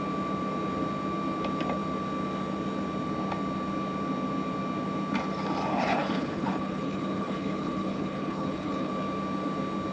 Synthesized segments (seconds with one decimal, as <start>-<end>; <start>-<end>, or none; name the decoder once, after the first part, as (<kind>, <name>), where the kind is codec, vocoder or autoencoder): 5.7-8.9 (codec, HILCodec)